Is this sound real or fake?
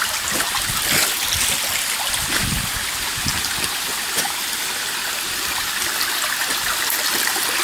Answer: real